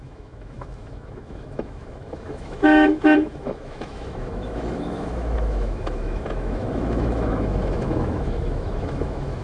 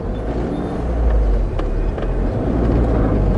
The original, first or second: second